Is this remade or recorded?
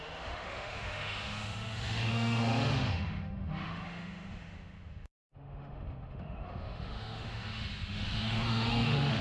remade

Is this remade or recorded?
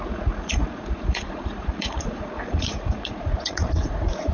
remade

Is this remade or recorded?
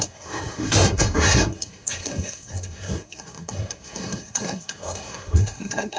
remade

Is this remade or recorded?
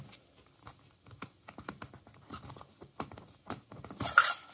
recorded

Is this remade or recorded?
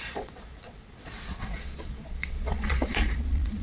remade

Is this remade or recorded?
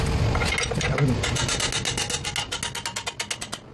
recorded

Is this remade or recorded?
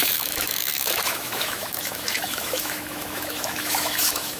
remade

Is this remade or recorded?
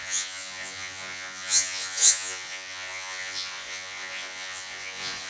remade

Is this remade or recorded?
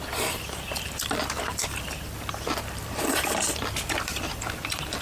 remade